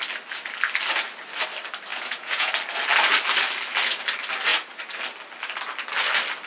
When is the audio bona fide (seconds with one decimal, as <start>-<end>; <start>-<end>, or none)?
0.0-1.9; 2.5-6.5